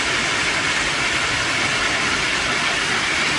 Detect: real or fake real